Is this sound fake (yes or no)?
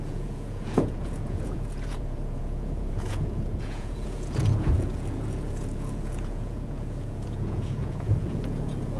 yes